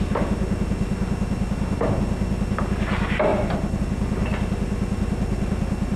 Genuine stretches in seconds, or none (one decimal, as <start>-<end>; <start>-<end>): 0.0-6.0